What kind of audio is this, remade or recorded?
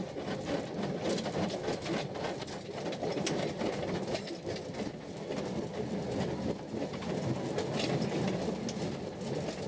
recorded